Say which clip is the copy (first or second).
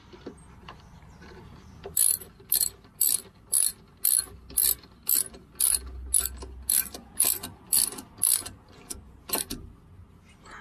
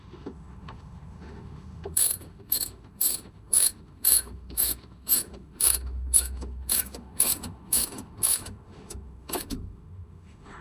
second